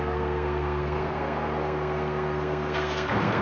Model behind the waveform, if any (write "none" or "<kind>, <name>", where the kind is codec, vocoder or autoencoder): codec, SNAC